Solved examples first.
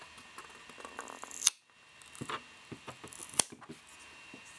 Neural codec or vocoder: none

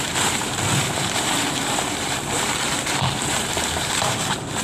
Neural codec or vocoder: vocoder, BigVGAN v2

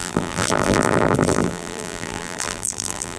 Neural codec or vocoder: vocoder, BigVGAN v2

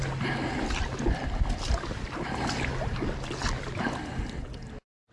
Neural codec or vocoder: none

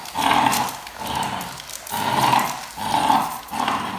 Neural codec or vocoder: none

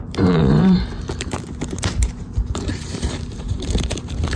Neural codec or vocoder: vocoder, BigVGAN v2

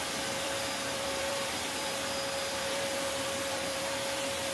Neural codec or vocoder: vocoder, BigVGAN v2